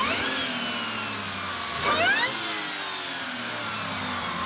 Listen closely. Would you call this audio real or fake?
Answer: real